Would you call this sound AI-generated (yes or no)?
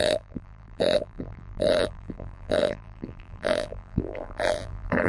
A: yes